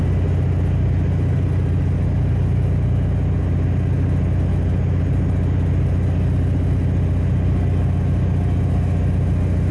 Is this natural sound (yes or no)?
yes